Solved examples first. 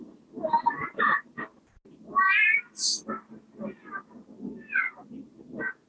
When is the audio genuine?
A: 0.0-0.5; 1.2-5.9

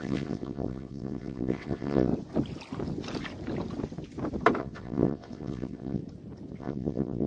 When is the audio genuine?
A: 2.1-4.6; 6.0-6.6

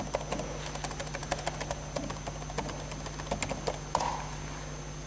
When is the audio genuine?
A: 0.0-5.1

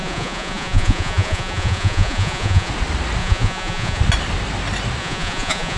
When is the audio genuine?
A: 2.7-3.2; 4.0-5.0

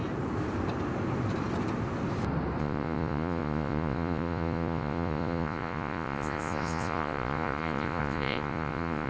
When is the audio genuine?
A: 0.0-2.6

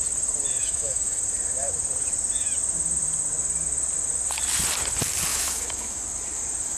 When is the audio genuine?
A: 0.0-0.6; 1.2-5.3; 6.0-6.8

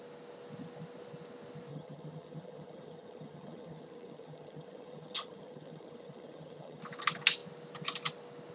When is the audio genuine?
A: 0.0-1.7; 6.8-8.5